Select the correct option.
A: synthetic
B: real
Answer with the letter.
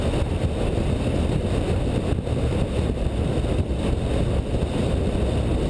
B